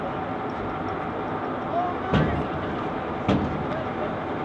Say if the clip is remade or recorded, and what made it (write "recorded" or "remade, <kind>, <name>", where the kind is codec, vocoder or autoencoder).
recorded